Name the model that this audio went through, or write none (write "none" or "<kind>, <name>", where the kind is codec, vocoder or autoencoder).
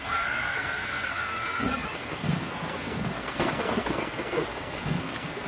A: codec, SNAC